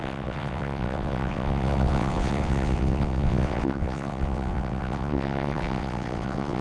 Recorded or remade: remade